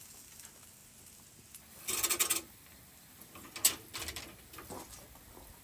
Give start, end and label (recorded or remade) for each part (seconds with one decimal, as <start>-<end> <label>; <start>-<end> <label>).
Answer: 0.0-5.6 recorded